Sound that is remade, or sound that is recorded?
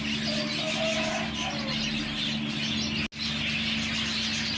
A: recorded